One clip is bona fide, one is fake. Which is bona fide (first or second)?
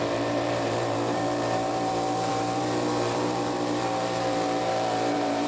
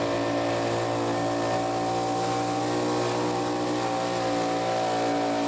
second